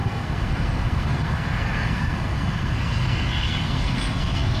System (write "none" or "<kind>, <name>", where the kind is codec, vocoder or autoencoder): codec, SNAC